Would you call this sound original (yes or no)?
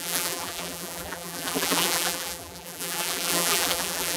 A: no